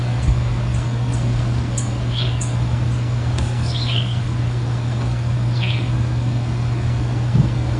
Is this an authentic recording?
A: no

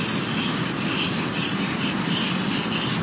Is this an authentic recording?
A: yes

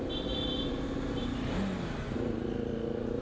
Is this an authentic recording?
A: yes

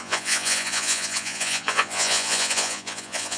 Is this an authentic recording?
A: no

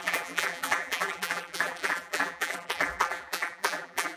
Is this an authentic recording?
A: no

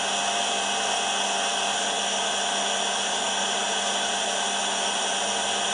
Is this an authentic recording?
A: yes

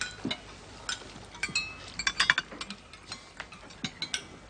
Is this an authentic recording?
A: yes